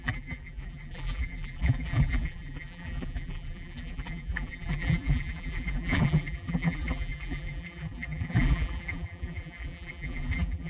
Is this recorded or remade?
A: remade